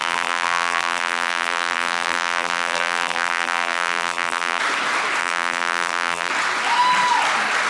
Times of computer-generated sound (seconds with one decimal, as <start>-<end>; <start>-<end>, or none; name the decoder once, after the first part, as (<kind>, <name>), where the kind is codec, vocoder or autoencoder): 0.0-4.6 (vocoder, BigVGAN v2); 5.2-6.3